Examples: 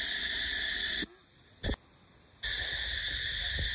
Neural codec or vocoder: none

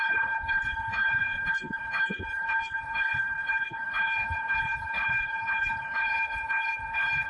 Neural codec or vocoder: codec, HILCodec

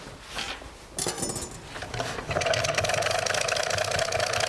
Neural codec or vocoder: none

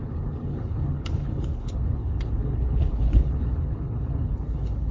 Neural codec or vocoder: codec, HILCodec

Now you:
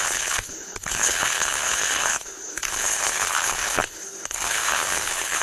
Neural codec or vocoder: codec, HILCodec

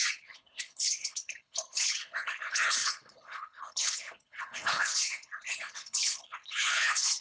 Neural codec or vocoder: codec, HILCodec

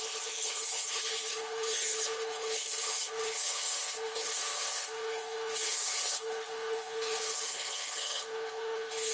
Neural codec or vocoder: codec, HILCodec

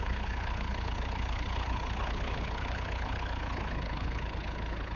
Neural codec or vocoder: codec, HILCodec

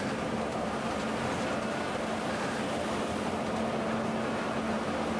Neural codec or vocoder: none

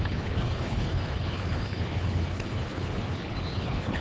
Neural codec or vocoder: codec, HILCodec